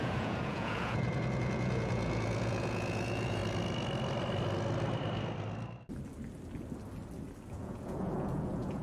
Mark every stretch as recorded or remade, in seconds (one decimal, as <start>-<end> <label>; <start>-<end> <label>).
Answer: 0.0-3.4 remade; 3.4-7.5 recorded; 7.5-8.8 remade